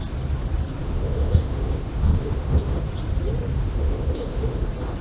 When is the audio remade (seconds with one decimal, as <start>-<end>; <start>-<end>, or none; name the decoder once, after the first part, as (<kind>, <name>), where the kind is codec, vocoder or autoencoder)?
0.8-2.9 (autoencoder, DAC-VAE); 3.5-4.6

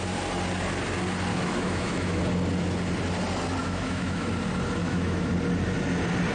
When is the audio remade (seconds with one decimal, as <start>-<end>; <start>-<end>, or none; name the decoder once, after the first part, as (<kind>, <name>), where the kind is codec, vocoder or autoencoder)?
1.3-2.2 (autoencoder, DAC-VAE); 3.6-4.3; 4.8-5.3

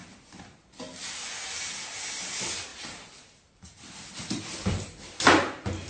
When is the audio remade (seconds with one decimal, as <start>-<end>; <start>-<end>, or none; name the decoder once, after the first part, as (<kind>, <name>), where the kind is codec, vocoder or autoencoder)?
0.0-1.1 (vocoder, BigVGAN v2); 2.7-5.0

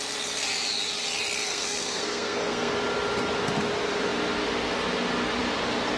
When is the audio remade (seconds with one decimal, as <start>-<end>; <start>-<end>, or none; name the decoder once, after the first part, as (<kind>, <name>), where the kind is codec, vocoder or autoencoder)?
1.5-2.7 (codec, SNAC)

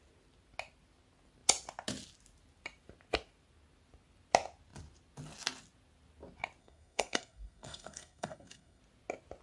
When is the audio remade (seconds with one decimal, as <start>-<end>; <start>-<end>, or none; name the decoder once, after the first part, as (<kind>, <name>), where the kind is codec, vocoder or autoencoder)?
6.6-8.8 (codec, SNAC)